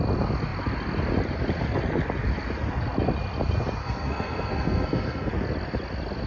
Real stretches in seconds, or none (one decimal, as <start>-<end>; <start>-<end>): 0.0-3.8; 5.3-6.3